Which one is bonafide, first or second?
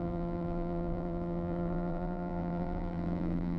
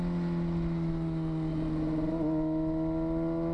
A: second